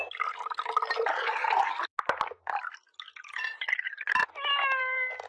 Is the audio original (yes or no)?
yes